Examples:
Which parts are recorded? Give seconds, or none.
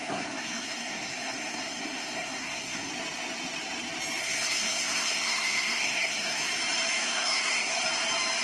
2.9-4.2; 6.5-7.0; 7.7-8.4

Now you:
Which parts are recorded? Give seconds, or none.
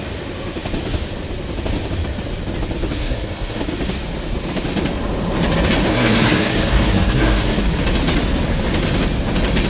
0.0-3.0; 3.6-5.9; 7.6-9.7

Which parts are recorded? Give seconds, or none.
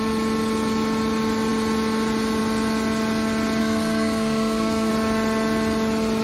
0.0-3.6; 4.9-6.2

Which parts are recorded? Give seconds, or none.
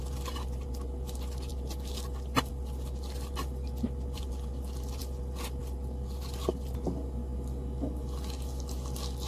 0.0-9.3